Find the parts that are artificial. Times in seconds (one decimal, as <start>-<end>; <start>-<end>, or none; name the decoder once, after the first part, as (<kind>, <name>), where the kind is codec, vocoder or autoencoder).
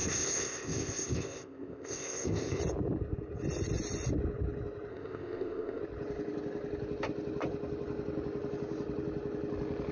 0.0-2.6 (codec, ZipCodec); 4.9-5.8